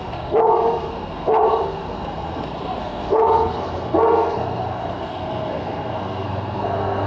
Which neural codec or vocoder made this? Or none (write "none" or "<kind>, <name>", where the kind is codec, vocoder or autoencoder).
codec, SNAC